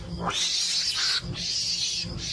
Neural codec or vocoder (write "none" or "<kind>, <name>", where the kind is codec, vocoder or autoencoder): none